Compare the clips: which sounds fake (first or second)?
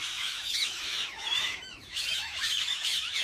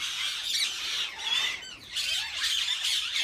first